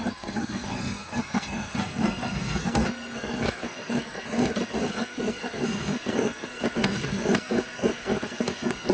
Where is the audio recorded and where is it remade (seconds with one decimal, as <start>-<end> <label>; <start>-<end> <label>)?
0.0-8.9 remade